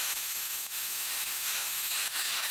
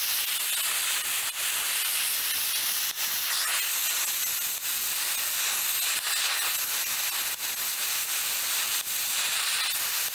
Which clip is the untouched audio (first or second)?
second